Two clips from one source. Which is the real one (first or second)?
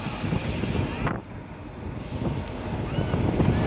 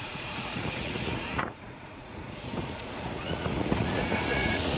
first